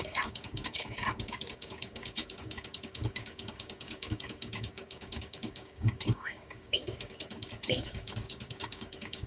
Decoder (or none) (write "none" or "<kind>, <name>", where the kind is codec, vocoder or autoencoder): codec, DAC